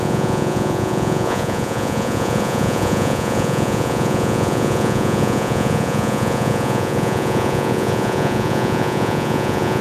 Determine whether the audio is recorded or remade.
remade